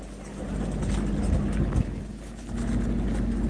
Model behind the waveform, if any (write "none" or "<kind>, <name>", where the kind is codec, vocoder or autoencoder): none